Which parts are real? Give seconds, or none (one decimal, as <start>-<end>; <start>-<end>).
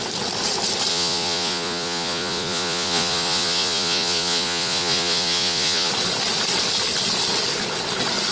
0.0-0.9; 5.9-8.3